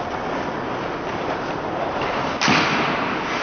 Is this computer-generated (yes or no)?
no